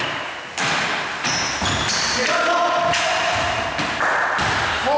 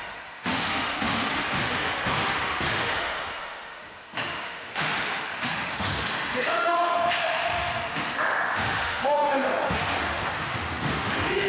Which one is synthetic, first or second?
second